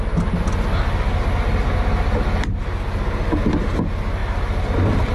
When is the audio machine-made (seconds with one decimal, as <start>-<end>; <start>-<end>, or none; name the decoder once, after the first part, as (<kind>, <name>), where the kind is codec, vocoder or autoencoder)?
none